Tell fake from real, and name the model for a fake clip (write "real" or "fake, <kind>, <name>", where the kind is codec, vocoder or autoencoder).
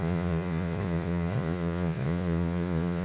fake, vocoder, Vocos